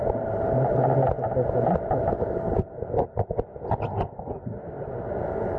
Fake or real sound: real